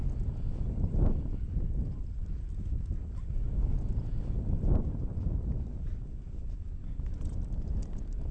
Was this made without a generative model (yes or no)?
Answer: yes